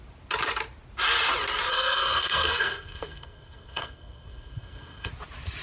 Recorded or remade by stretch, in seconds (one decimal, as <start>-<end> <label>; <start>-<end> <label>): 0.0-1.7 recorded; 1.7-5.1 remade; 5.1-5.6 recorded